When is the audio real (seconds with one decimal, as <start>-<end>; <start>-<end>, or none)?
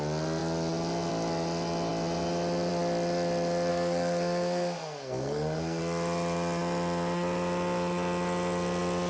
0.0-3.7; 5.8-9.1